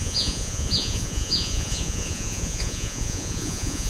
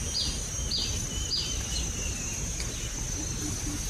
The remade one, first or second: first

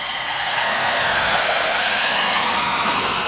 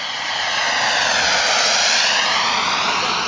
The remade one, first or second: first